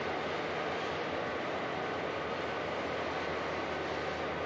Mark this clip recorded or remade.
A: recorded